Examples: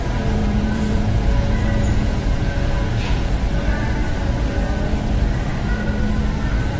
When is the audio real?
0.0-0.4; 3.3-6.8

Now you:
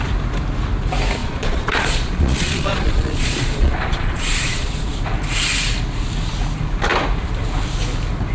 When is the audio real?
0.0-1.2; 4.9-8.3

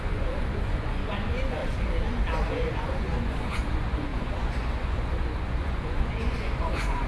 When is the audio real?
1.6-2.5